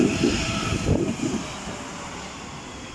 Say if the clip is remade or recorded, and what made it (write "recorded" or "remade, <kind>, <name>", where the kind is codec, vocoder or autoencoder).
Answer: recorded